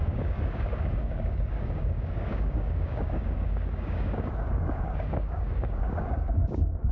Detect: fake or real fake